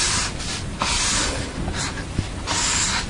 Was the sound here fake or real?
real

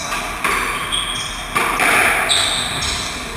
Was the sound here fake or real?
real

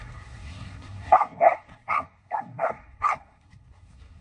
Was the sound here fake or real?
fake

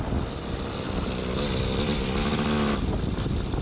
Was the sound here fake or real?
real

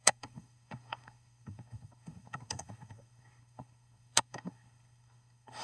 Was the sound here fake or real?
fake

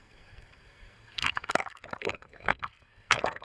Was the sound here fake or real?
fake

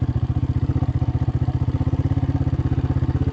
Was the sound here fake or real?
real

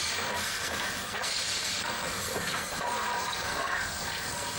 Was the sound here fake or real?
fake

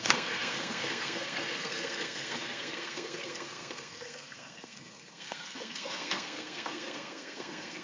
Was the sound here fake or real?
fake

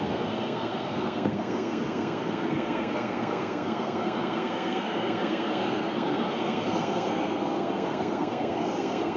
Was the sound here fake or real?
fake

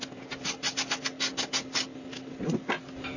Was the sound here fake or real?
real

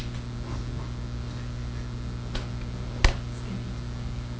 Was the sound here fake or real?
real